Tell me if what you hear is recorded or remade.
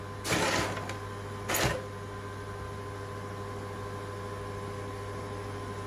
recorded